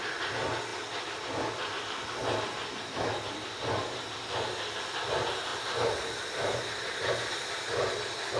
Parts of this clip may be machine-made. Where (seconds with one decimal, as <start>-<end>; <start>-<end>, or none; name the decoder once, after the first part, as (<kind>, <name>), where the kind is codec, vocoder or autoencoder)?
5.5-7.3 (vocoder, BigVGAN v2)

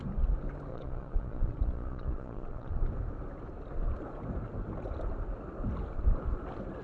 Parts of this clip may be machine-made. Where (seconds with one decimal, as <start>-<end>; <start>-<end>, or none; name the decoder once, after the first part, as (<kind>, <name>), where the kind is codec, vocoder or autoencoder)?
0.7-2.8 (vocoder, Vocos)

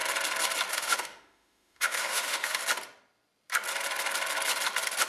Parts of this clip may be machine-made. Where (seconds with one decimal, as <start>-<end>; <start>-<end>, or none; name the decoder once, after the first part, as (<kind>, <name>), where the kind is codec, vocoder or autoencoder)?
0.7-2.6 (autoencoder, DAC-VAE)